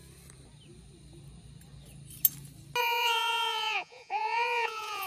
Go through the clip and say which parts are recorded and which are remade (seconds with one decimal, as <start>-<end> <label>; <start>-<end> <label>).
0.0-2.8 recorded; 2.8-5.1 remade